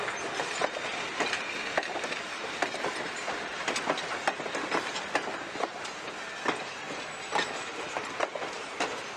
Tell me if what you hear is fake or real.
real